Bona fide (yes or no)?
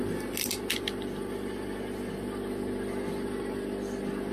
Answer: yes